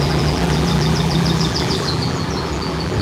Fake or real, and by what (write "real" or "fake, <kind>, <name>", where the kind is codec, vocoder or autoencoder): fake, vocoder, BigVGAN v2